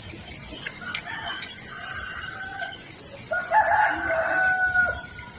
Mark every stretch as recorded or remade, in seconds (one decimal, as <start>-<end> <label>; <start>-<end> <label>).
0.0-0.4 recorded; 0.4-1.8 remade; 1.8-2.5 recorded; 2.5-3.0 remade; 3.0-5.4 recorded